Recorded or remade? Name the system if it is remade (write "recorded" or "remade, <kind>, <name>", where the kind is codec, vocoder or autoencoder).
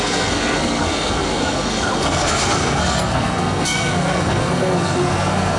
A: remade, codec, SNAC